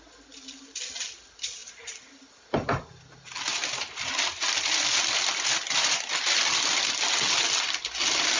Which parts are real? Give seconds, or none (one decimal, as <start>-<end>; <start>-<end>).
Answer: 0.0-1.6; 5.0-8.4